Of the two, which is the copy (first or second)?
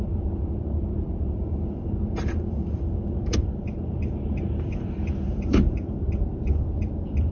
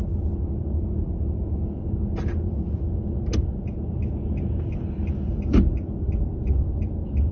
first